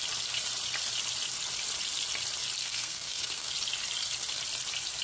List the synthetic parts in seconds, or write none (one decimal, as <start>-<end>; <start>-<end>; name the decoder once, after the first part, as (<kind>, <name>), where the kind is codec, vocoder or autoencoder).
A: 2.6-3.5 (codec, SNAC)